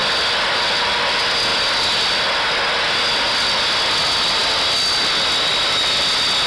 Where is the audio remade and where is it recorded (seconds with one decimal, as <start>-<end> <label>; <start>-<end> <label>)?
0.0-6.5 recorded